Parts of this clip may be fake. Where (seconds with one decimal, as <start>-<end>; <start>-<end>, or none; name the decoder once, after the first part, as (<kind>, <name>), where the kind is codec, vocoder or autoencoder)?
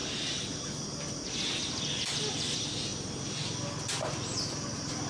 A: none